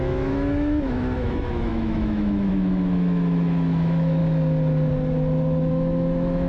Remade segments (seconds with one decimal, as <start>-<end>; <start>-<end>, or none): 0.0-4.2; 5.7-6.5